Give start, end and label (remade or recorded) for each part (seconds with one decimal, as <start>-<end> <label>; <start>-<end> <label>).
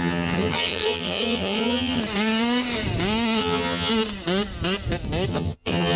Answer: 0.0-2.0 remade; 2.0-3.4 recorded; 3.4-3.9 remade; 3.9-5.3 recorded; 5.3-6.0 remade